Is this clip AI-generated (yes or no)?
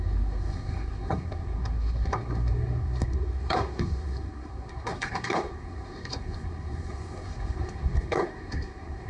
yes